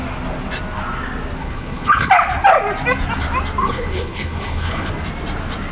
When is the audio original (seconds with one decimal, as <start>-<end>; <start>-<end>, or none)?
0.0-1.4; 2.1-3.6; 4.9-5.7